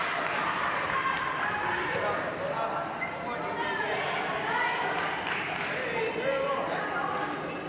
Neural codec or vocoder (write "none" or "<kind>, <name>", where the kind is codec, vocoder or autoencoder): none